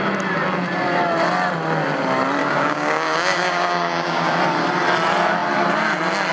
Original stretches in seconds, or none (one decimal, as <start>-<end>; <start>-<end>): 0.0-2.4; 4.4-6.3